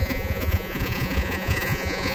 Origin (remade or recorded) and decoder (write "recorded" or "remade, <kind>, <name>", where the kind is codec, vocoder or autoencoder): remade, vocoder, Vocos